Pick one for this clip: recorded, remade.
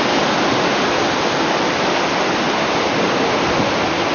recorded